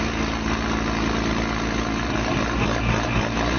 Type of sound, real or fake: real